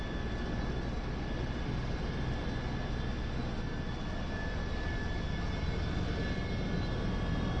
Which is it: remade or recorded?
recorded